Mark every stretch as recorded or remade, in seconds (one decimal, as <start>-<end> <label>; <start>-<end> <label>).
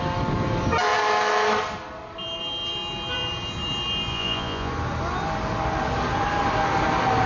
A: 0.0-4.1 recorded; 4.1-4.7 remade; 4.7-7.3 recorded